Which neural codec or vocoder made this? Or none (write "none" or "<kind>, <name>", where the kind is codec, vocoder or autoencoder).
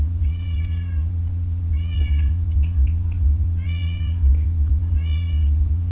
vocoder, Vocos